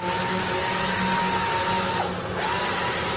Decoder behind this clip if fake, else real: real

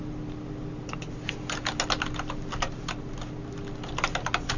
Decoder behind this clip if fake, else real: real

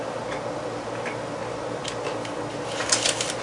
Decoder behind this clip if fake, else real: real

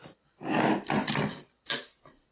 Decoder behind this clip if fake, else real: real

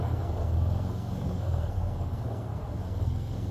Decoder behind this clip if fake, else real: fake, codec, SNAC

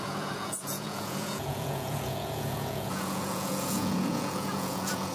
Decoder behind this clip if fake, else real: fake, vocoder, Vocos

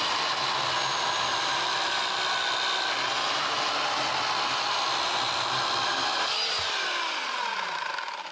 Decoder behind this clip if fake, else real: real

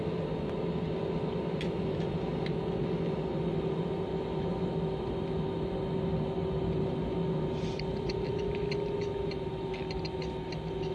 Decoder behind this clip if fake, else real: real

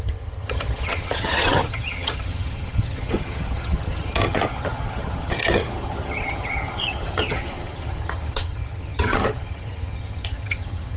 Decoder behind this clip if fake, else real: fake, vocoder, HiFi-GAN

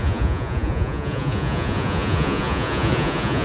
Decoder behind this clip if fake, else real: fake, vocoder, Vocos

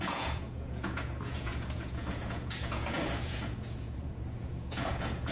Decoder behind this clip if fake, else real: fake, vocoder, Vocos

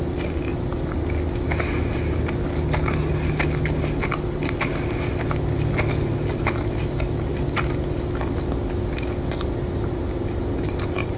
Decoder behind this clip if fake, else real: real